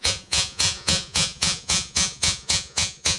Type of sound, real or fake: fake